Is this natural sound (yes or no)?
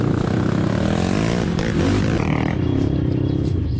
yes